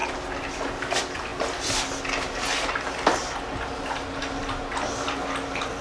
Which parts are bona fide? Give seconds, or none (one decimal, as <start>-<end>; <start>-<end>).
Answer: 0.0-5.8